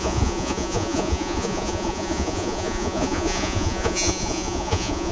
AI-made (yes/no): yes